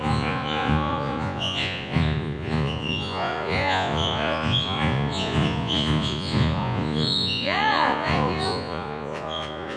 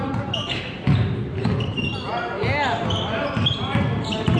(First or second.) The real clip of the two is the second